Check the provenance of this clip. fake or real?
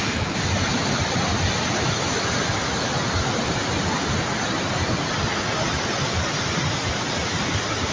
real